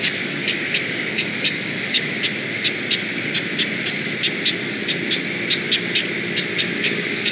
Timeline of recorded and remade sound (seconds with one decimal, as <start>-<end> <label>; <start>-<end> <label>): 0.0-2.2 remade; 2.2-6.6 recorded; 6.6-7.3 remade